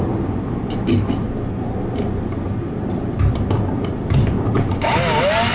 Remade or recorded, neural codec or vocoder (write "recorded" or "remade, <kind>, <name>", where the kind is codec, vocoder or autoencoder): recorded